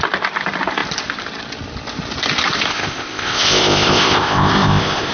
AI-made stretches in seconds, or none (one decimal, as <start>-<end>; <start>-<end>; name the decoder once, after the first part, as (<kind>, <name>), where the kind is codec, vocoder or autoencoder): 2.7-5.1 (codec, ZipCodec)